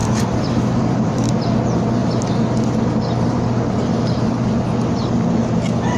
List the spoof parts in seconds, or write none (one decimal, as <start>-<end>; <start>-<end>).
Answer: 0.0-1.3